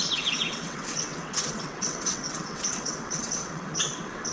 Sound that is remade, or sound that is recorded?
remade